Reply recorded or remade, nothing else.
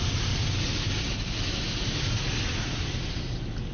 recorded